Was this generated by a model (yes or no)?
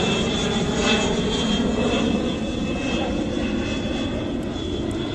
no